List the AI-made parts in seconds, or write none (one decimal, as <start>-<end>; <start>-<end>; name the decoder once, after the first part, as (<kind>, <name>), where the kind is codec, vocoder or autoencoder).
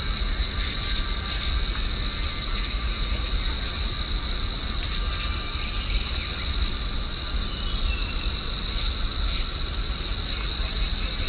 2.5-3.3 (vocoder, Vocos)